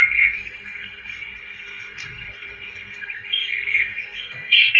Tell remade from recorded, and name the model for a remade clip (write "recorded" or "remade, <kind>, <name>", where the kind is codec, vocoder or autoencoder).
remade, codec, SNAC